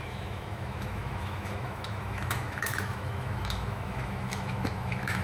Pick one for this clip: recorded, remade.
remade